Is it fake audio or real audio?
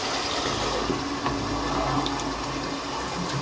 real